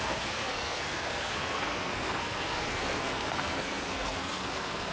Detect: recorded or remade remade